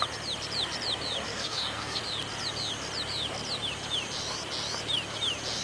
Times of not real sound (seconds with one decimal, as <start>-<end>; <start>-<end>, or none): 1.3-2.0